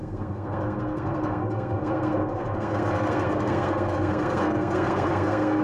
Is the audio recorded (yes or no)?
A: no